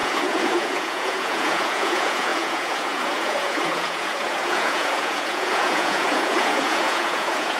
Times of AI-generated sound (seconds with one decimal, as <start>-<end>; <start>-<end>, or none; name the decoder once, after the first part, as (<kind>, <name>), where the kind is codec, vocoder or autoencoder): 0.0-7.6 (vocoder, Vocos)